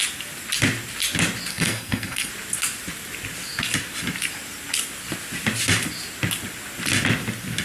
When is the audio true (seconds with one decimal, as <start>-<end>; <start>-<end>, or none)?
0.0-1.5; 2.3-7.6